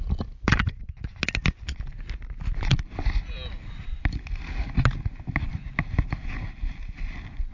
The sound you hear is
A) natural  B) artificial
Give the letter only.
A